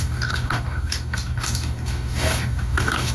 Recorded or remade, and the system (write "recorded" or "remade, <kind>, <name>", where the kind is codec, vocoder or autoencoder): remade, codec, DAC